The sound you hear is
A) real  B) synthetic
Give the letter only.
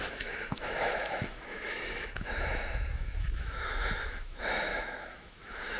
B